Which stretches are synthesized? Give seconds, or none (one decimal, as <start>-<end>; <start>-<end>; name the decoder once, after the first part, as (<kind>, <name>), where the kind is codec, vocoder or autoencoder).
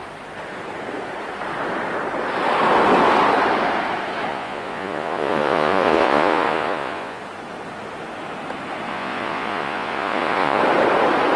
4.3-7.2 (vocoder, Vocos); 8.9-10.6